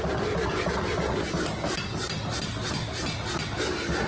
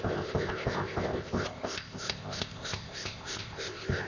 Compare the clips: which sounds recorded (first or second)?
first